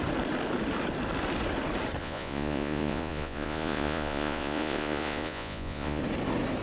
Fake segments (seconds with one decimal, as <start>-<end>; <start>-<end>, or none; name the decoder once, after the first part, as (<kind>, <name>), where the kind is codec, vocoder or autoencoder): 2.0-6.0 (vocoder, Vocos)